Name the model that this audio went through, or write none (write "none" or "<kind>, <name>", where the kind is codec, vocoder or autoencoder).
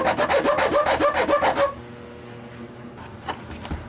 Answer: none